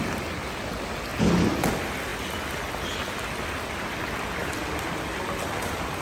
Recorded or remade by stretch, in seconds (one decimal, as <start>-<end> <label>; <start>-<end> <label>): 0.0-6.0 recorded